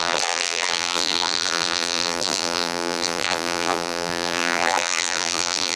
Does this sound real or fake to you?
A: fake